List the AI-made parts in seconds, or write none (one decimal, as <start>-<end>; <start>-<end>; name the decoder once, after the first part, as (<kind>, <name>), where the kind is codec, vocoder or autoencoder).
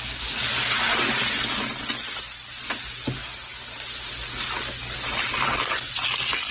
none